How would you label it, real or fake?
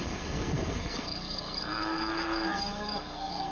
fake